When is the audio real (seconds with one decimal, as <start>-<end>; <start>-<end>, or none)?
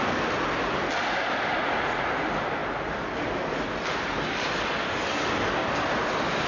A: 0.0-1.5; 2.1-6.5